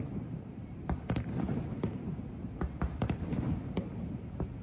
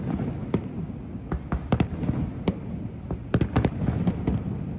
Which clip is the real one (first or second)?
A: second